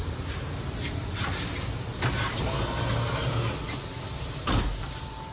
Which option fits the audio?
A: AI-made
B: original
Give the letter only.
B